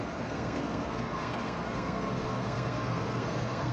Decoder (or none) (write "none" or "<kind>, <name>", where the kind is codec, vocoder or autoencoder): codec, SNAC